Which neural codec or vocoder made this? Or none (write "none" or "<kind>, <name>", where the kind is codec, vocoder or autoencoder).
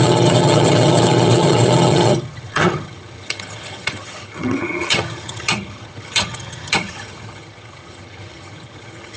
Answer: vocoder, HiFi-GAN